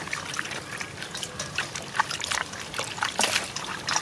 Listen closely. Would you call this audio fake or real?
real